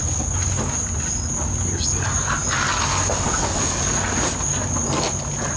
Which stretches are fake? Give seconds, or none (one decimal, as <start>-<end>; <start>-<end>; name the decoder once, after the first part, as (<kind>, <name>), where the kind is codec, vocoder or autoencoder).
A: none